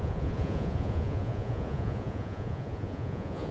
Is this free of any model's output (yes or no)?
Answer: no